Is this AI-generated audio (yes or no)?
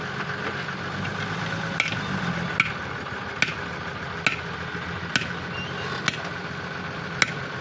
no